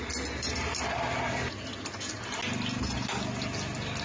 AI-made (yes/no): no